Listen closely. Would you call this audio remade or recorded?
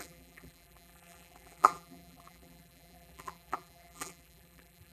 remade